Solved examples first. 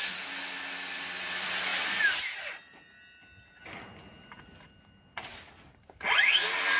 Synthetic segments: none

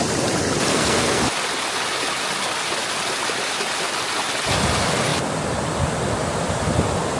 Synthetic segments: 0.7-1.2 (codec, SNAC)